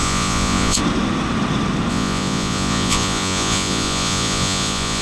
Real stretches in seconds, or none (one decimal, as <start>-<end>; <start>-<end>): 0.8-1.9